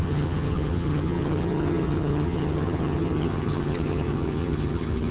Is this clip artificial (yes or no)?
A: yes